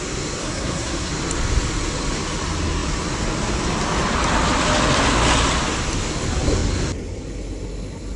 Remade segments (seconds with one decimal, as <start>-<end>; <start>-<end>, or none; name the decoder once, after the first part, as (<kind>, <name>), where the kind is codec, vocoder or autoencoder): 0.4-1.1 (codec, SNAC)